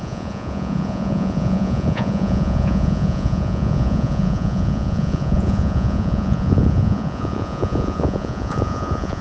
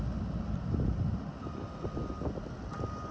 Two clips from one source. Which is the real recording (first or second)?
second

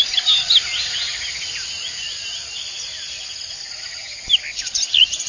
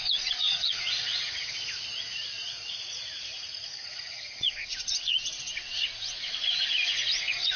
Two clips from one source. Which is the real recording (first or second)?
first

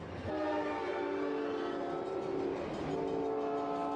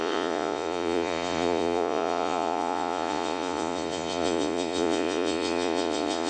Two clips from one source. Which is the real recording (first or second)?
first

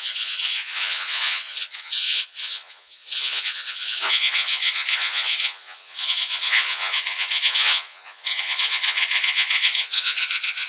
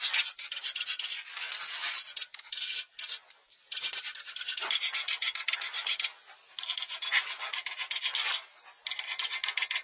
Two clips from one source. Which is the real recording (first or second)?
second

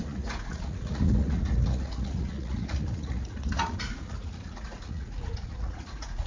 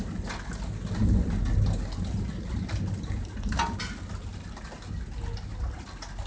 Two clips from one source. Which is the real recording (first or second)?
second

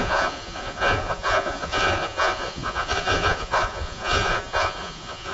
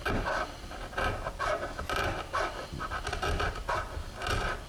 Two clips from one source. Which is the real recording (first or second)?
second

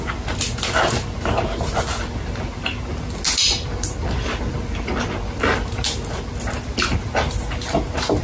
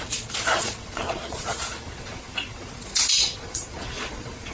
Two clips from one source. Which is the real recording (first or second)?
first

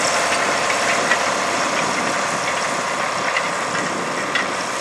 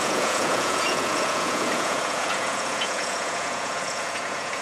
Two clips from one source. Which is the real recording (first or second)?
first